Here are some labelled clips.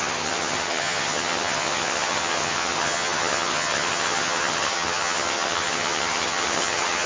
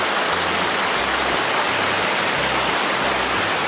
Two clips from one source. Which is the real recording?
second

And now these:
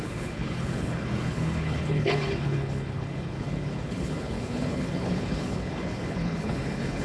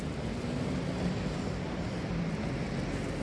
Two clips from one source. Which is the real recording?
second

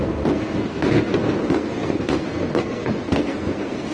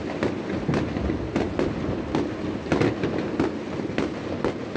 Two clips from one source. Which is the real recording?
second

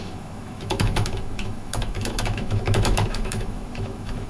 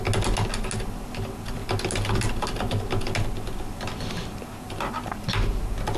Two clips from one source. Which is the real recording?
second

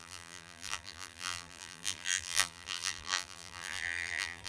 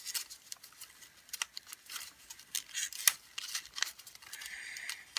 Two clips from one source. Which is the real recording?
second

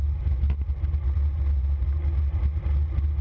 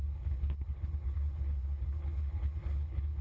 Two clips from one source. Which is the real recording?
first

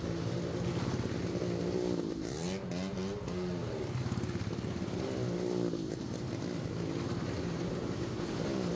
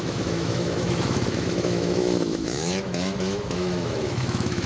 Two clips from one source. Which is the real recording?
first